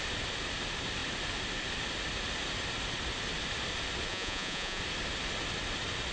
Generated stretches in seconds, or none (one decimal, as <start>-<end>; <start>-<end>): 4.1-4.8